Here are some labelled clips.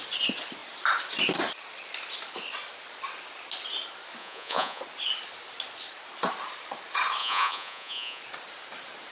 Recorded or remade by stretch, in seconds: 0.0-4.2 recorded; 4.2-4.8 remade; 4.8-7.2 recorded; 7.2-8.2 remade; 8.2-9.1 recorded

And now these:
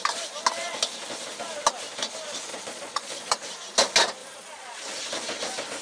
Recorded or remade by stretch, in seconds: 0.0-2.5 recorded; 2.5-3.3 remade; 3.3-4.2 recorded; 4.2-4.8 remade; 4.8-5.8 recorded

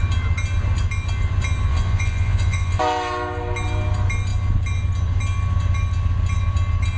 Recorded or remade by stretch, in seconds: 0.0-1.7 recorded; 1.7-2.8 remade; 2.8-7.0 recorded

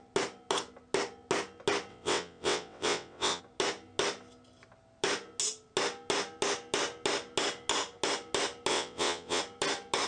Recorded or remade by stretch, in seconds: 0.0-1.9 recorded; 1.9-3.4 remade; 3.4-8.7 recorded; 8.7-9.4 remade; 9.4-10.1 recorded

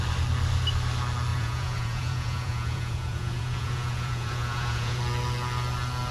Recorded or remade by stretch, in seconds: 0.0-1.3 recorded; 1.3-5.0 remade; 5.0-6.1 recorded

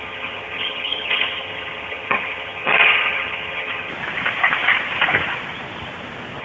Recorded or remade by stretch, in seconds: 0.0-3.9 remade; 3.9-6.4 recorded